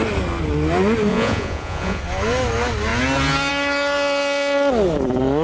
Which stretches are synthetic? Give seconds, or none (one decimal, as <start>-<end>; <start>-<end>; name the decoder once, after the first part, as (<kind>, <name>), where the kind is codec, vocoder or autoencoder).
1.1-2.0 (vocoder, Vocos)